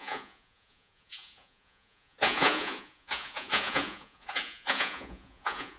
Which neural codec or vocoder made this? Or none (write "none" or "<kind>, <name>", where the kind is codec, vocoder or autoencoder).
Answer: vocoder, Vocos